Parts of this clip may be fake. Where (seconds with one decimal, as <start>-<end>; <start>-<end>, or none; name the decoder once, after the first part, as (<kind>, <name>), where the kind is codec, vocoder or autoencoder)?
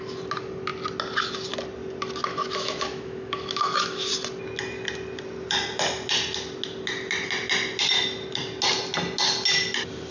2.3-4.1 (autoencoder, DAC-VAE)